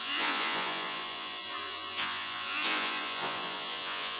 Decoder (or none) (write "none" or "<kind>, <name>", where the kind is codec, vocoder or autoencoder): vocoder, Vocos